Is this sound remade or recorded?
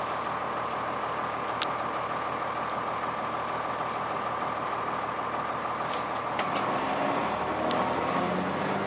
recorded